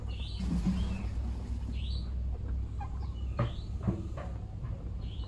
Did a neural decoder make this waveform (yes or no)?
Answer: no